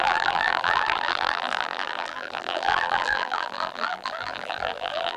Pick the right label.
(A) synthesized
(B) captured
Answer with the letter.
A